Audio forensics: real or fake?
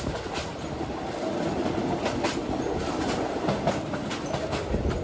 real